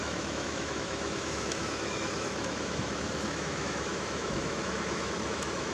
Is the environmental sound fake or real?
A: fake